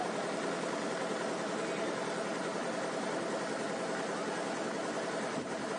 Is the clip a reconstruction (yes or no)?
no